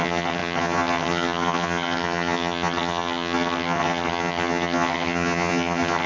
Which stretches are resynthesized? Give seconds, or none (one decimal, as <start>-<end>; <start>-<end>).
0.0-6.1